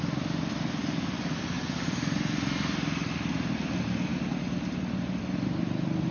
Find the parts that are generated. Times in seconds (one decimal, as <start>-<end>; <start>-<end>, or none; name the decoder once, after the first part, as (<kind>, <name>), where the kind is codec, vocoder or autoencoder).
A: none